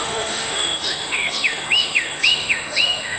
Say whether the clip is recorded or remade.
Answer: remade